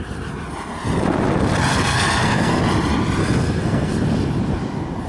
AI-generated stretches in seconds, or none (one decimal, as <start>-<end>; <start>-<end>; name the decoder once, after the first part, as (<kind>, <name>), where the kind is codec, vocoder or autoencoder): 1.7-2.6 (codec, SNAC); 3.2-3.9